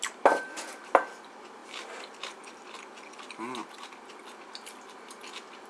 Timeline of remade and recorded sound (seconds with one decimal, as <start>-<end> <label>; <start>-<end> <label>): 0.0-1.6 recorded; 1.6-2.9 remade; 2.9-3.6 recorded; 3.6-4.1 remade; 4.1-5.7 recorded

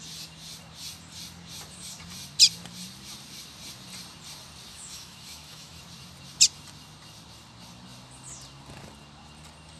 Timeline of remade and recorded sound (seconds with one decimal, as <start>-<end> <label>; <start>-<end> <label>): 0.0-4.7 recorded; 4.7-5.8 remade; 5.8-9.8 recorded

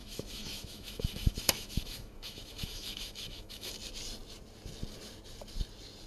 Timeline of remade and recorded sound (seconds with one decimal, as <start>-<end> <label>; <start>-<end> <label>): 0.0-3.7 remade; 3.7-6.1 recorded

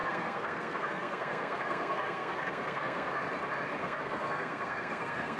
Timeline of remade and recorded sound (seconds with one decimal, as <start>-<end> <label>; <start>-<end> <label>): 0.0-3.2 remade; 3.2-3.8 recorded; 3.8-5.4 remade

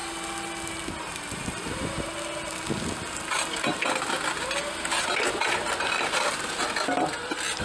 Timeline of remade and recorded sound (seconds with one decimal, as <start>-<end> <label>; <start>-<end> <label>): 0.0-7.6 recorded

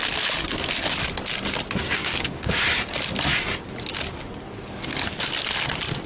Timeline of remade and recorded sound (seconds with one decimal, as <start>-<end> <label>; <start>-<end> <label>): 0.0-2.0 recorded; 2.0-2.6 remade; 2.6-6.1 recorded

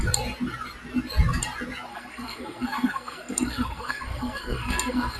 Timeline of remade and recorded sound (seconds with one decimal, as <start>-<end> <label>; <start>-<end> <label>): 0.0-1.9 recorded; 1.9-5.2 remade

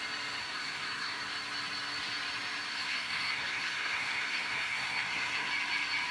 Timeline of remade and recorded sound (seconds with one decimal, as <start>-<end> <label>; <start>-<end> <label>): 0.0-0.4 recorded; 0.4-1.2 remade; 1.2-2.7 recorded; 2.7-5.5 remade; 5.5-6.1 recorded